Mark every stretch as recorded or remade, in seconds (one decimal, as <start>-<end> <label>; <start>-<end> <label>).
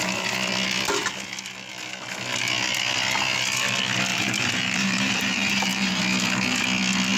0.0-4.1 recorded; 4.1-6.0 remade; 6.0-7.2 recorded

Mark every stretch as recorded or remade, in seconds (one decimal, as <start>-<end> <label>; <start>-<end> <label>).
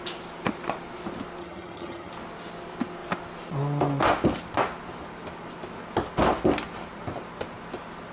0.0-1.4 recorded; 1.4-2.1 remade; 2.1-8.1 recorded